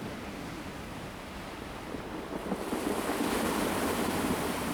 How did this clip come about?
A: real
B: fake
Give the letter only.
A